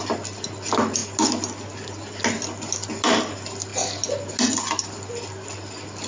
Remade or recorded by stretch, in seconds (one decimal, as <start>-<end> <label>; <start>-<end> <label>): 0.0-6.1 recorded